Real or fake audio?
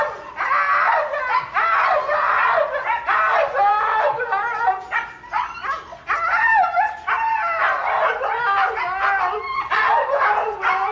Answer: real